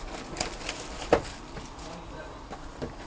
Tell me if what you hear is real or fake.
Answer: real